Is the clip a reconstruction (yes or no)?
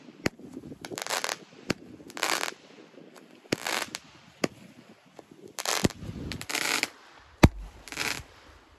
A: yes